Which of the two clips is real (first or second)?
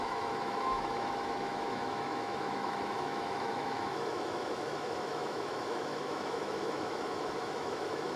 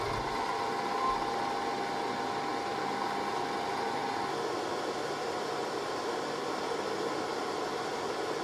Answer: second